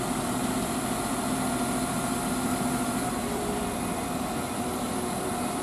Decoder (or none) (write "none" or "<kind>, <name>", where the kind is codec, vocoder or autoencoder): vocoder, BigVGAN v2